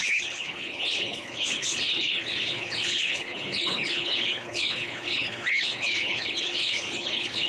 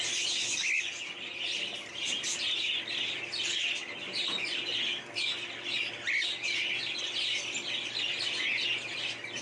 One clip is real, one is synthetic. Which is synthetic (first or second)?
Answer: first